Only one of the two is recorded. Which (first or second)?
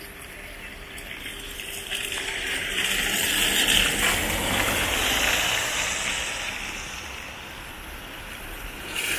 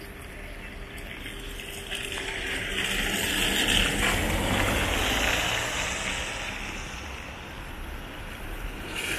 second